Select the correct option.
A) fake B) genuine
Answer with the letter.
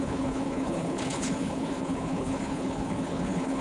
A